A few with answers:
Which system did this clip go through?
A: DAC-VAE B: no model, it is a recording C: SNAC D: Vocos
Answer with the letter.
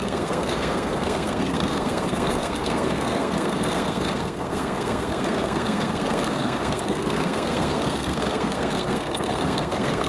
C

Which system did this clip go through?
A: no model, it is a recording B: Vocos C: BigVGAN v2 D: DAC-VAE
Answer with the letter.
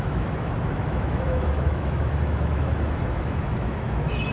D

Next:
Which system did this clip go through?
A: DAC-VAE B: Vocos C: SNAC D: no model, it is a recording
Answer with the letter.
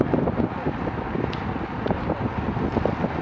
D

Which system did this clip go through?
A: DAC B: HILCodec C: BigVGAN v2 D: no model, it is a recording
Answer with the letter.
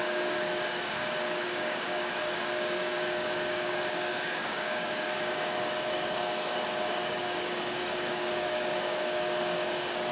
A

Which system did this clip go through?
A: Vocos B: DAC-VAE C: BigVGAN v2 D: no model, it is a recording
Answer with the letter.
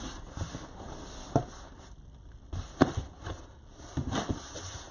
D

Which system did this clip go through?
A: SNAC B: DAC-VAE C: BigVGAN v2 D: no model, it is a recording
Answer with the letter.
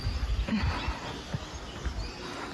D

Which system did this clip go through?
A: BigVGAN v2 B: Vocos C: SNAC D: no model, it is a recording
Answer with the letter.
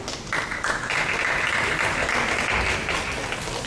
D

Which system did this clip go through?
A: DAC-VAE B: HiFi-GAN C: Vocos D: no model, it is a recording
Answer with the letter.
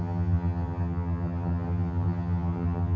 B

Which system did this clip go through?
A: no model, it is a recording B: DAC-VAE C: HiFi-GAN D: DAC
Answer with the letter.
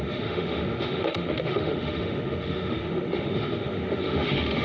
B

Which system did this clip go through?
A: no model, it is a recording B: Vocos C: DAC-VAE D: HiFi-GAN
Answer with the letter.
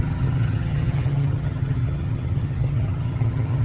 D